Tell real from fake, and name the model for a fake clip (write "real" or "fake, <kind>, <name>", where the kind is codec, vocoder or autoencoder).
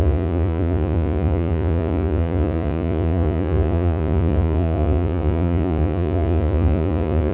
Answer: fake, vocoder, Vocos